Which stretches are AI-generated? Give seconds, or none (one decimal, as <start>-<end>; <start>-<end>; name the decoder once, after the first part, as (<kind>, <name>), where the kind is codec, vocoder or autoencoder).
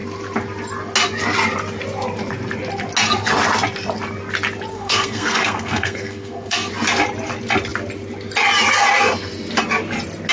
4.7-6.7 (codec, SNAC)